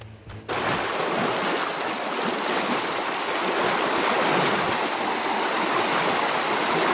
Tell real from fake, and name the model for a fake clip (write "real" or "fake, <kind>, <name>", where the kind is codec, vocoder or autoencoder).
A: real